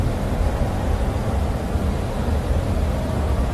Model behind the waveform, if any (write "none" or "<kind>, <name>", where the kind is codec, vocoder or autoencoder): vocoder, BigVGAN v2